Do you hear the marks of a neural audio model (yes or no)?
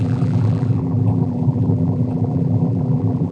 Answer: yes